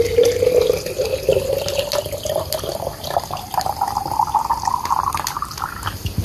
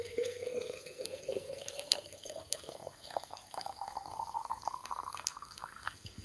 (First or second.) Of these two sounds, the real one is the first